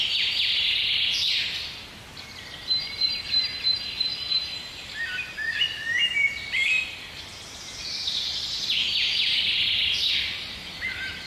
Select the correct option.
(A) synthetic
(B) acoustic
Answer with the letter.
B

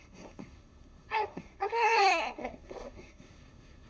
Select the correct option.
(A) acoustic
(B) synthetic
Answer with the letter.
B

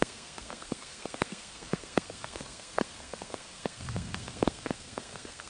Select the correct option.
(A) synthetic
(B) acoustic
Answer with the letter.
A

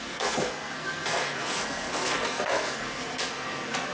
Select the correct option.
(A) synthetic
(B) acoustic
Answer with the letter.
A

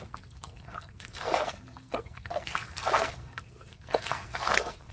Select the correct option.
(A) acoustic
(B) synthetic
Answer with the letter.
B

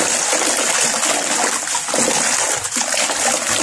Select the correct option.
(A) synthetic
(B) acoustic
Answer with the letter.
B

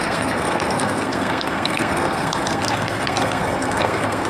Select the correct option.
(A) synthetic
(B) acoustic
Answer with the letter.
A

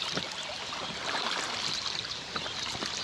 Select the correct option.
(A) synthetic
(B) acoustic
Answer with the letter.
B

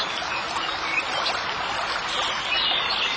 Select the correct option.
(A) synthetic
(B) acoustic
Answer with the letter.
B